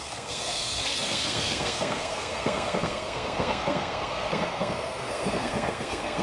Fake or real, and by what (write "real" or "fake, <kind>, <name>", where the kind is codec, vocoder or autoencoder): fake, codec, SNAC